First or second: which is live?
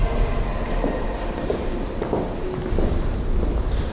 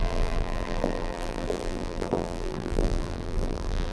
first